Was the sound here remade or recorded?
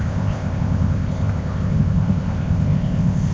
remade